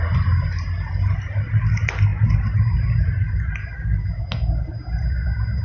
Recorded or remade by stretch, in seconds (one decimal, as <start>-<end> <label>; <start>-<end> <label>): 0.0-5.6 recorded